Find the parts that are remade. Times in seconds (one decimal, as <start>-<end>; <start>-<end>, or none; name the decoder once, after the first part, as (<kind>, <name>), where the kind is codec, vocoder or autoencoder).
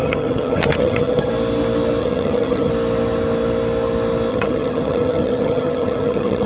0.0-1.3 (vocoder, HiFi-GAN); 2.0-2.7; 4.3-6.5